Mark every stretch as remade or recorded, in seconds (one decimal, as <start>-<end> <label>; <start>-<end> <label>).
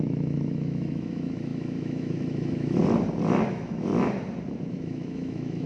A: 0.0-2.8 remade; 2.8-3.5 recorded; 3.5-3.9 remade; 3.9-4.7 recorded; 4.7-5.7 remade